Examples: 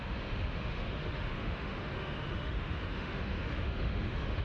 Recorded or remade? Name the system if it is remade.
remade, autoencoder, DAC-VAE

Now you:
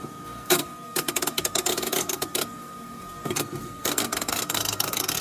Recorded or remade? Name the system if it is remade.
remade, codec, SNAC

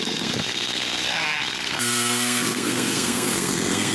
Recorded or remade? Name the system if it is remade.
remade, codec, SNAC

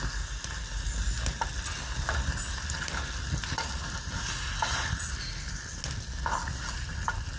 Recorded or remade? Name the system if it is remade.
recorded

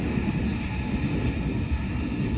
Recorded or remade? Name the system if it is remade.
recorded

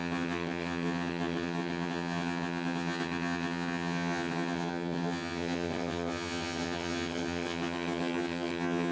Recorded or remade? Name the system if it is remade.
remade, vocoder, HiFi-GAN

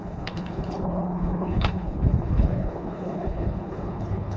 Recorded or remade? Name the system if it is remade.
remade, codec, HILCodec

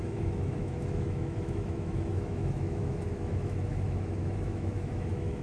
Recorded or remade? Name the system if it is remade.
remade, autoencoder, DAC-VAE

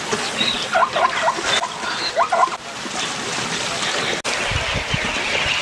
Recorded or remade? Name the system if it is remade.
recorded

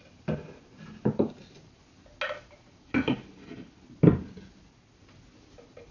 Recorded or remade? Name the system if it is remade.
recorded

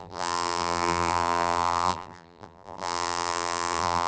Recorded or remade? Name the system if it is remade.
remade, vocoder, BigVGAN v2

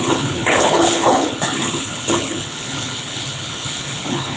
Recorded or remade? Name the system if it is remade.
remade, codec, HILCodec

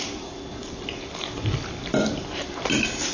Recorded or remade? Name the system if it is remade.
recorded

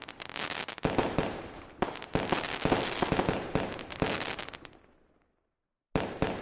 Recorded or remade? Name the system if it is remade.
recorded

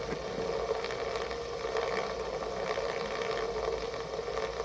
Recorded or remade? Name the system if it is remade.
recorded